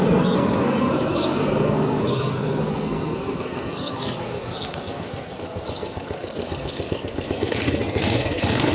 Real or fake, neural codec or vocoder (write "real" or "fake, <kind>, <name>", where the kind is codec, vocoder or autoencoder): fake, codec, SNAC